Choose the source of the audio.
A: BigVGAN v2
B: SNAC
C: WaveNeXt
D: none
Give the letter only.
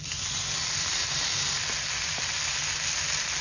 D